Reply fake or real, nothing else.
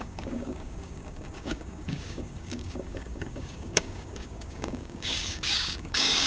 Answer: fake